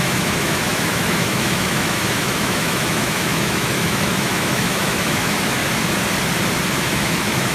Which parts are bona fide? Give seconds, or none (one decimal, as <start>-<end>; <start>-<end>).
5.6-6.8

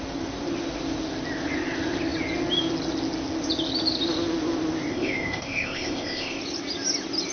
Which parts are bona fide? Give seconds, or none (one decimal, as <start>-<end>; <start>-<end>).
0.0-4.9; 6.4-7.3